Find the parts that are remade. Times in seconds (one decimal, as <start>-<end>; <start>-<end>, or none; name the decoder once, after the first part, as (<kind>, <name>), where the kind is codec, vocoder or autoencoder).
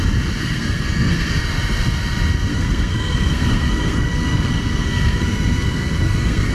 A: 0.4-1.4 (codec, SNAC); 2.5-6.5